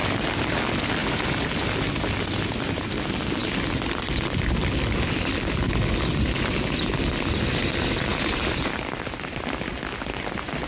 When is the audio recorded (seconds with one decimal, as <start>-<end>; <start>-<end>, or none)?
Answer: 0.6-1.0; 1.5-8.1; 8.9-10.7